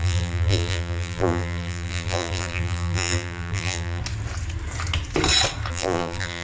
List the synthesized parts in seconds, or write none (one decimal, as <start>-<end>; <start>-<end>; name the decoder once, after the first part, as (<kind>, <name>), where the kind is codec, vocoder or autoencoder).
0.0-4.0 (vocoder, BigVGAN v2); 5.7-6.4

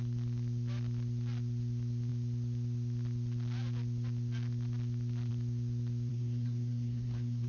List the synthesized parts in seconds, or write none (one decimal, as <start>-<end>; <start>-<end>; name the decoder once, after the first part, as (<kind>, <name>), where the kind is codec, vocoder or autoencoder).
6.1-7.5 (codec, SNAC)

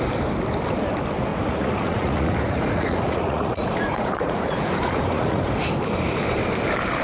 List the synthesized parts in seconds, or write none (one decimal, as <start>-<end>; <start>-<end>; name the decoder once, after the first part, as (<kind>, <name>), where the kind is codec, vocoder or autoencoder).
1.3-5.5 (vocoder, Vocos)

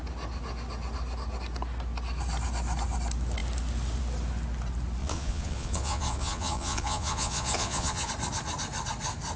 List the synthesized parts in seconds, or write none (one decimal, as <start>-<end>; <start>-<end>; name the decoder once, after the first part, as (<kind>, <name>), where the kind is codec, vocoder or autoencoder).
5.0-8.1 (vocoder, Vocos)